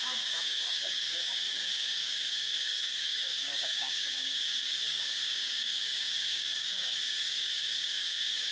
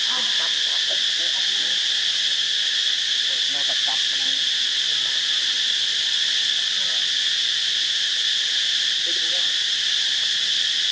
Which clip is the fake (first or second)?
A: first